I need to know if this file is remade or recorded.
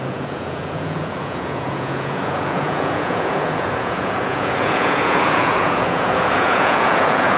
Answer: remade